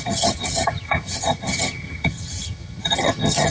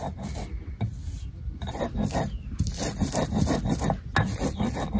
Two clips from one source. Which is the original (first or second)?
second